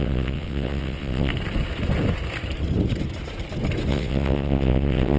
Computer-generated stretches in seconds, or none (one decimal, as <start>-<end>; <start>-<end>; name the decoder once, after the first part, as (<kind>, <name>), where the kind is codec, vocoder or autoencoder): 0.0-1.3 (vocoder, WaveNeXt); 3.9-5.2